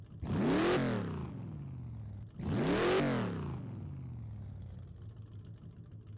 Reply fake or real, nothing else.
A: real